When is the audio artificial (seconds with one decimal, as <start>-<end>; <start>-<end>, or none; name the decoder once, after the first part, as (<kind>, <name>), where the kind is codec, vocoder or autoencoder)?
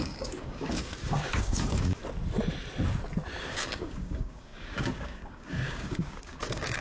0.0-2.0 (codec, DAC); 3.5-6.8